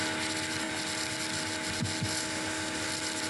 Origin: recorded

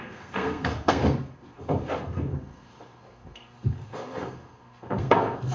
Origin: remade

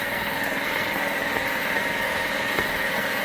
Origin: remade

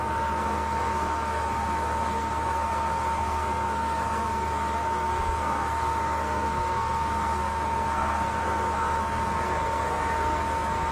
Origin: remade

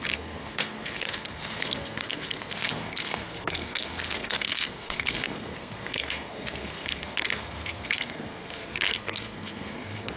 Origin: remade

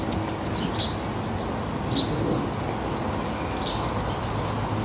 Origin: recorded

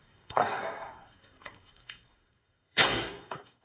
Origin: remade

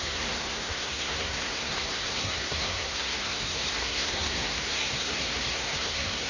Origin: remade